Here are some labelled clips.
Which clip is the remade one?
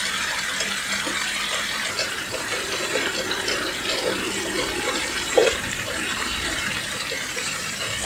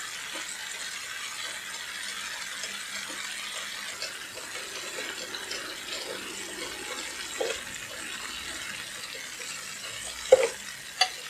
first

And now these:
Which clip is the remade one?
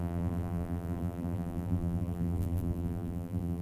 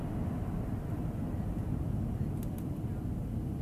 first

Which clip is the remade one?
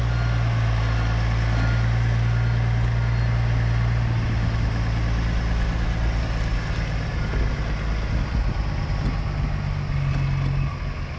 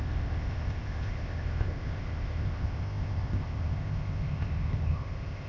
second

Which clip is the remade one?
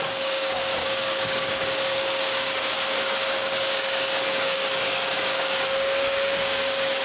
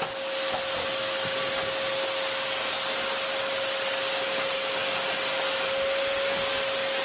first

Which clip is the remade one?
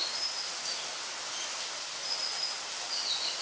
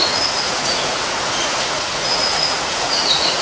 second